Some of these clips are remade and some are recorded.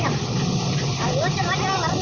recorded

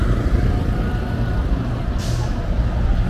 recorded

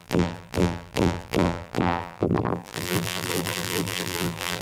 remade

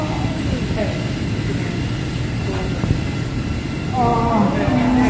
recorded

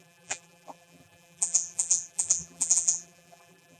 remade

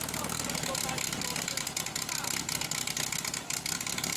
recorded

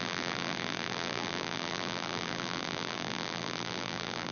remade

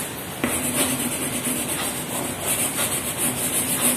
recorded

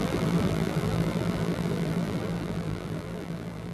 remade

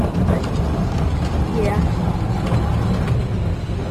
recorded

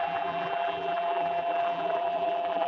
remade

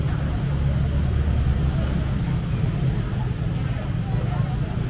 recorded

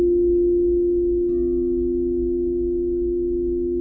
recorded